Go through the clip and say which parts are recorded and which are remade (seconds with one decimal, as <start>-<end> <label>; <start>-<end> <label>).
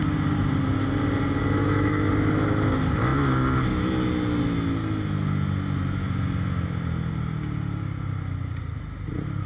0.0-1.6 recorded; 1.6-2.1 remade; 2.1-9.5 recorded